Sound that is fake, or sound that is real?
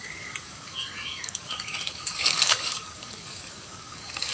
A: fake